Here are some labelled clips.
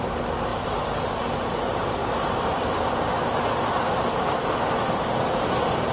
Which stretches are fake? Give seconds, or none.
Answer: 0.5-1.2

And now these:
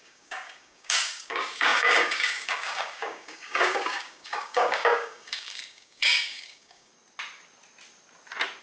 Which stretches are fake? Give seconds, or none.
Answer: 0.0-6.9

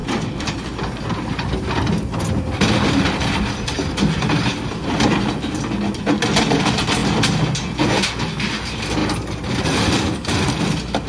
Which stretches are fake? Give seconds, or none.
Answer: 9.0-10.6

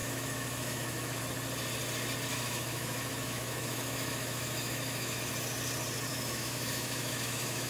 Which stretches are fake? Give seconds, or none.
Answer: 0.0-1.2; 2.3-5.3; 6.1-7.7

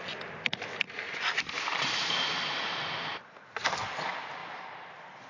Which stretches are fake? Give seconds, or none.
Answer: none

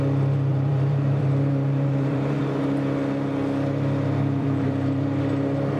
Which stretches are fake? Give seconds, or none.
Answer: 0.5-2.4; 4.4-5.2

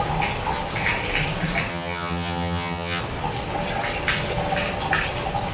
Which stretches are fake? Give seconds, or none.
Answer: 1.7-3.0